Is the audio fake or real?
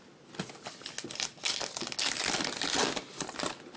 real